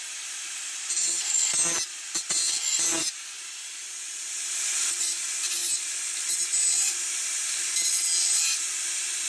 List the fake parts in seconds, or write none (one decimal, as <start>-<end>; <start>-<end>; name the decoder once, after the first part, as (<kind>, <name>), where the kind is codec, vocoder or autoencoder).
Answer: none